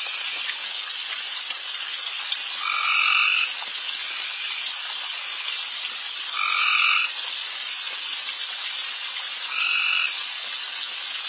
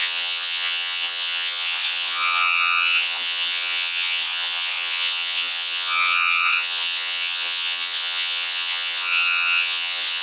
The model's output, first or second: second